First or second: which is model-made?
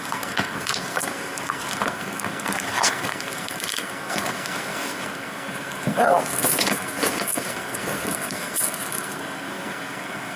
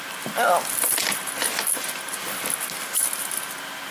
first